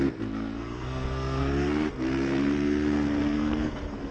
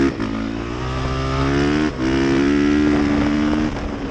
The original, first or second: second